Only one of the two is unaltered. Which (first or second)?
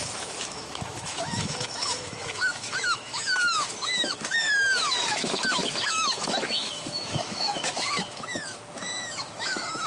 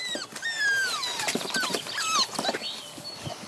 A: second